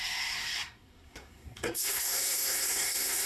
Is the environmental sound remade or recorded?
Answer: remade